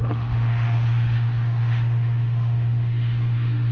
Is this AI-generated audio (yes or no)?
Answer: yes